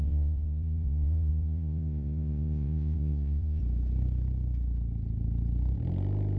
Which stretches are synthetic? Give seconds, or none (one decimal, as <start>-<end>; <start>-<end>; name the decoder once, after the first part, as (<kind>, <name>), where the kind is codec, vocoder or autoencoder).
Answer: 0.0-3.6 (vocoder, Vocos)